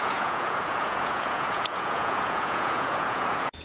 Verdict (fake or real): fake